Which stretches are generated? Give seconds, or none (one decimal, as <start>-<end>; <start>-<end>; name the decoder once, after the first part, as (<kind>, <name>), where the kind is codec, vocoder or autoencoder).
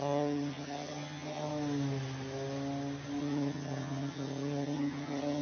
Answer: 0.0-1.5 (vocoder, HiFi-GAN); 3.2-5.4